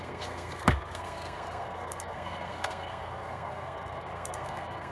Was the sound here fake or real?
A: fake